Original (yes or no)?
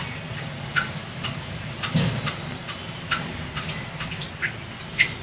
yes